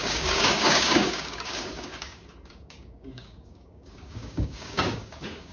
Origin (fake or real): fake